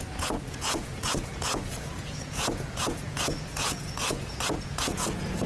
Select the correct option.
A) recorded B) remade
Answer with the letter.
B